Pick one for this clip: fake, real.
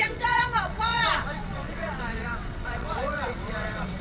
fake